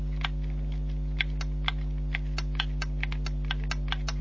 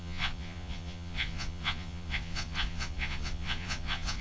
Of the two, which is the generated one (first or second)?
second